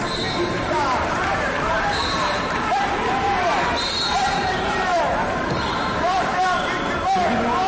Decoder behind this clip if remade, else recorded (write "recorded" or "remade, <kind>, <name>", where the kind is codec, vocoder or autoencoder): remade, vocoder, BigVGAN v2